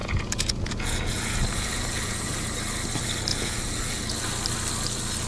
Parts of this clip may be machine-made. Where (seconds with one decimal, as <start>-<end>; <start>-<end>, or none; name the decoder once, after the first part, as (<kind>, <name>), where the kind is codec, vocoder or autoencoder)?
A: 0.0-2.3 (vocoder, Vocos); 3.3-4.3